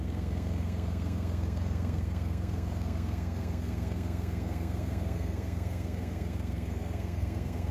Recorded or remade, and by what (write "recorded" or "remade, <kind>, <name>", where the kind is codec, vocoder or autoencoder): remade, codec, SNAC